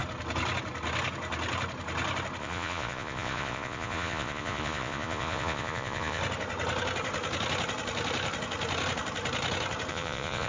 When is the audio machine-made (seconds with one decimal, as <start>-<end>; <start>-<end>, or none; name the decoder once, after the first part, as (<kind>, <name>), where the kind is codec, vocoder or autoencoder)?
2.4-6.2 (vocoder, Vocos); 9.9-10.5